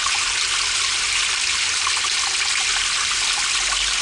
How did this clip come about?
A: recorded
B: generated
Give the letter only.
A